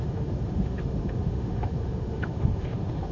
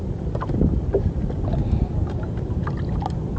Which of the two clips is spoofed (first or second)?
first